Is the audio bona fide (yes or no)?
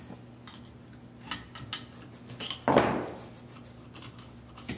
yes